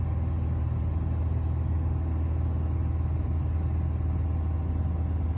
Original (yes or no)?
yes